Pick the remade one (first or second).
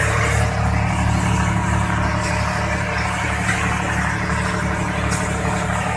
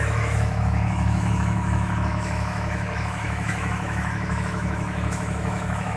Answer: second